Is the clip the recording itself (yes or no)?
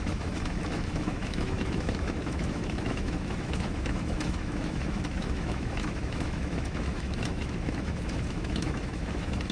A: no